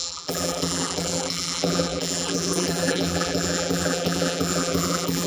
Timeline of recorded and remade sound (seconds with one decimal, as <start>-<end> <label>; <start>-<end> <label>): 0.0-5.3 remade